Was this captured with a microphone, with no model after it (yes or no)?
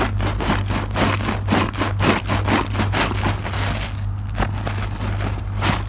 yes